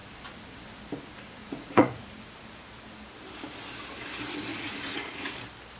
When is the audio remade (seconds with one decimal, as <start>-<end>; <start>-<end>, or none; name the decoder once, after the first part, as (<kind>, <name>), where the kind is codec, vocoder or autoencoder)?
1.4-2.4 (vocoder, Vocos); 4.5-5.3